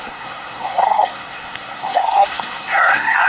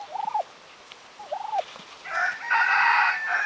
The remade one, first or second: first